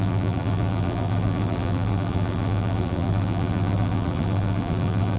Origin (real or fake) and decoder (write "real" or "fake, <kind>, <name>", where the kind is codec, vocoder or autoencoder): fake, vocoder, BigVGAN v2